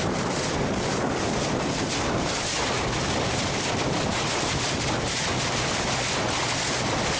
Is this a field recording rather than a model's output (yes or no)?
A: yes